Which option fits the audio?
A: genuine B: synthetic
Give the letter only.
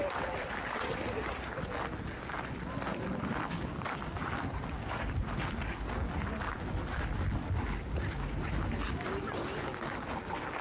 A